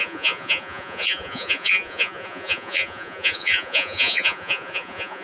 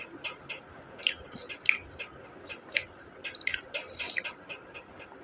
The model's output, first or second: first